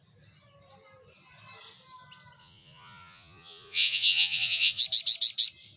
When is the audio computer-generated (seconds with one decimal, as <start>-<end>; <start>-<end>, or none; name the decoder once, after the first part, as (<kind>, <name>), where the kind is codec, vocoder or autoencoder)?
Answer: 2.4-4.8 (vocoder, Vocos)